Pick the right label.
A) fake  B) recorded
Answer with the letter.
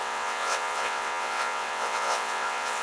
A